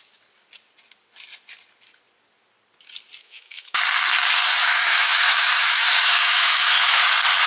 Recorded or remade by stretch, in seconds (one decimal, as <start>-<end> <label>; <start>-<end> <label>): 0.0-3.2 recorded; 3.2-3.8 remade; 3.8-4.6 recorded; 4.6-7.0 remade; 7.0-7.5 recorded